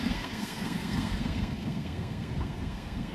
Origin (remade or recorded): remade